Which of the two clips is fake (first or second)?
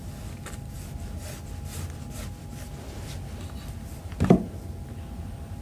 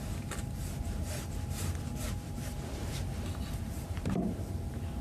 second